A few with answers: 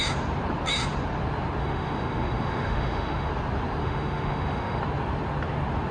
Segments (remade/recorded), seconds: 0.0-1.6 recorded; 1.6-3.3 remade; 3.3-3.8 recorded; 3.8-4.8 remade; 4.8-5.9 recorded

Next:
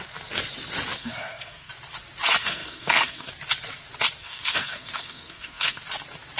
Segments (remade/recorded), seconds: 0.0-1.0 recorded; 1.0-1.7 remade; 1.7-2.4 recorded; 2.4-3.3 remade; 3.3-4.2 recorded; 4.2-5.8 remade; 5.8-6.4 recorded

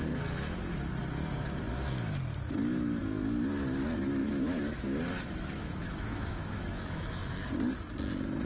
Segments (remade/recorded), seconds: 0.0-4.2 recorded; 4.2-7.5 remade; 7.5-8.5 recorded

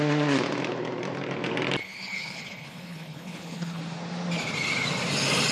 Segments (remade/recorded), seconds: 0.0-1.8 recorded; 1.8-3.8 remade; 3.8-5.5 recorded

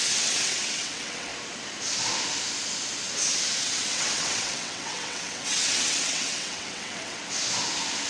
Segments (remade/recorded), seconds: 0.0-1.3 remade; 1.3-3.6 recorded; 3.6-7.2 remade; 7.2-8.1 recorded